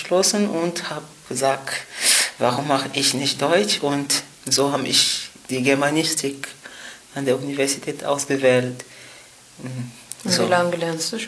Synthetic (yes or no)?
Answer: no